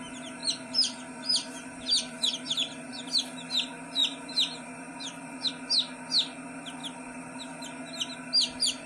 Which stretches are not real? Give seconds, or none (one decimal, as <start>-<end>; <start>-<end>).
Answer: 0.4-3.2; 4.0-5.4; 6.8-7.4